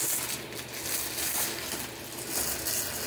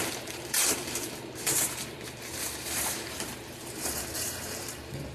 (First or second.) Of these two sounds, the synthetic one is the second